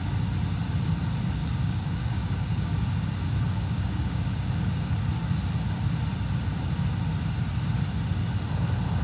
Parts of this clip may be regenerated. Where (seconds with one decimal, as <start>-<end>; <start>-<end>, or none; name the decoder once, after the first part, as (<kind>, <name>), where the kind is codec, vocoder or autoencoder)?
1.4-4.7 (codec, DAC)